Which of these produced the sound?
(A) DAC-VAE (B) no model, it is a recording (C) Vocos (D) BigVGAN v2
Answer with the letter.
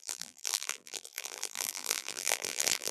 D